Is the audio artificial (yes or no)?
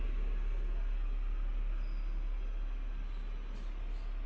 no